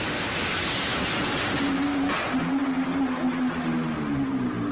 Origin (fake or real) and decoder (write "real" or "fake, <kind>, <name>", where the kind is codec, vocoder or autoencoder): real